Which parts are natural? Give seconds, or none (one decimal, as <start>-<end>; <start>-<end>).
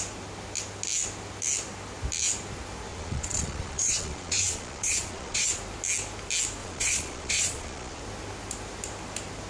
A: 0.0-2.9; 5.6-6.6; 8.0-9.5